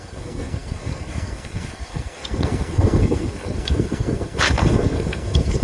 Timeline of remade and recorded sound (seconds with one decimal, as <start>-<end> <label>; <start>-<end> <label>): 0.0-5.6 remade

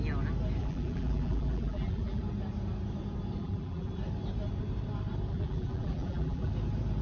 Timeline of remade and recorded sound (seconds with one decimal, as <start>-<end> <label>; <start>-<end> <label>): 0.0-0.6 recorded; 0.6-2.2 remade; 2.2-3.4 recorded; 3.4-3.9 remade; 3.9-5.3 recorded; 5.3-6.5 remade; 6.5-7.0 recorded

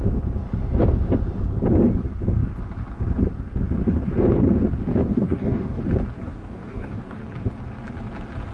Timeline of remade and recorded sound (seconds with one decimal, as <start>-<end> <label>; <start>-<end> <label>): 0.0-4.9 recorded; 4.9-5.8 remade; 5.8-6.3 recorded; 6.3-7.2 remade; 7.2-8.5 recorded

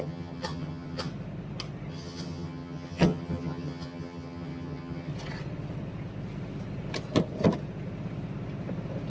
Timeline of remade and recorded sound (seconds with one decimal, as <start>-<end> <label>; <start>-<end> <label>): 0.0-1.1 remade; 1.1-1.9 recorded; 1.9-5.1 remade; 5.1-9.1 recorded

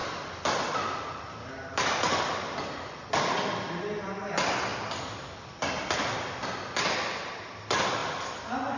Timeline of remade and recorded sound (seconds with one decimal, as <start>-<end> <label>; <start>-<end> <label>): 0.0-8.8 recorded

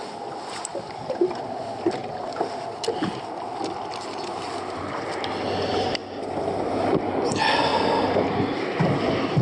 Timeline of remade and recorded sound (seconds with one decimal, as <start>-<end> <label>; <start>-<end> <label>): 0.0-2.0 recorded; 2.0-4.8 remade; 4.8-6.0 recorded; 6.0-6.6 remade; 6.6-9.4 recorded

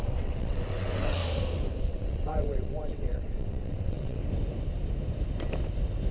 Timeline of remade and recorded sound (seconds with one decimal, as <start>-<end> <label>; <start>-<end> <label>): 0.0-1.2 remade; 1.2-1.8 recorded; 1.8-4.2 remade; 4.2-6.1 recorded

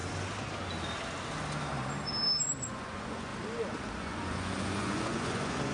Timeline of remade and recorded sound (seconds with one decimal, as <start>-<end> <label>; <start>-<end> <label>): 0.0-2.7 recorded; 2.7-3.3 remade; 3.3-4.0 recorded; 4.0-5.7 remade